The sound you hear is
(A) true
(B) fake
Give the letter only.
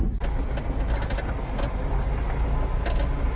A